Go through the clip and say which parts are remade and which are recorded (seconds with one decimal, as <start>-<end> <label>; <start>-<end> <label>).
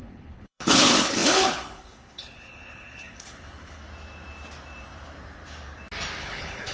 0.0-3.8 remade; 3.8-6.2 recorded; 6.2-6.7 remade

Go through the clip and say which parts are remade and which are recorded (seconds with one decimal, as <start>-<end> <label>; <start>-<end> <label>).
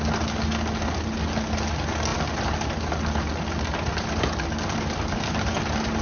0.0-6.0 recorded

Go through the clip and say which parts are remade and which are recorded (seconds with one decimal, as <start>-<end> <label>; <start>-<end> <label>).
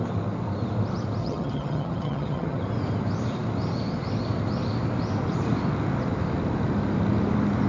0.0-1.2 recorded; 1.2-2.6 remade; 2.6-7.7 recorded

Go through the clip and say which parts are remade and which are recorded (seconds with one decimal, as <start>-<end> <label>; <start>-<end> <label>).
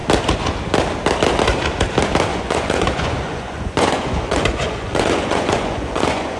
0.0-2.3 recorded; 2.3-6.4 remade